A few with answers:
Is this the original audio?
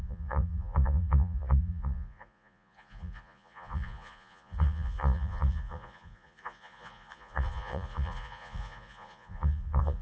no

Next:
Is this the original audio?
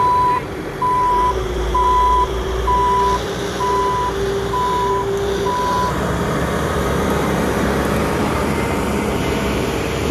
no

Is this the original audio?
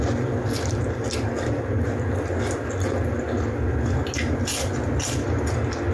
yes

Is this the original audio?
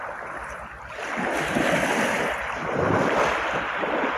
yes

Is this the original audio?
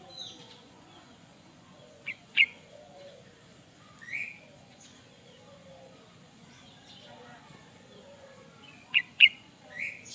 no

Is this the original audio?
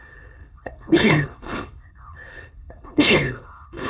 no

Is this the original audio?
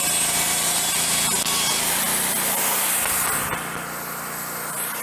yes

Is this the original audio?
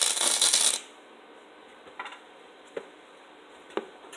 yes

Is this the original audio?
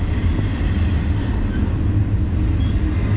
yes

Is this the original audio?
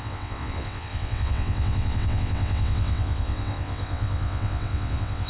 no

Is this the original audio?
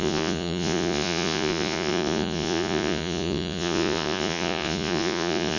no